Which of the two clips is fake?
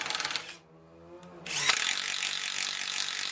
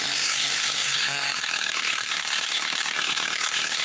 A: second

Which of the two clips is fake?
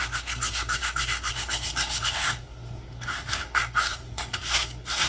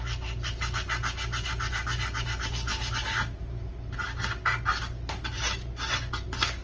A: first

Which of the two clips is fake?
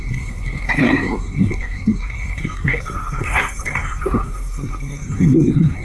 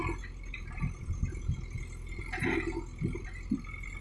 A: first